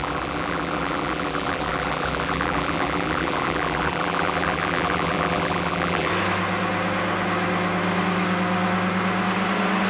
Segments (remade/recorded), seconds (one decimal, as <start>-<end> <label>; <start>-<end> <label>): 0.0-6.1 remade; 6.1-9.9 recorded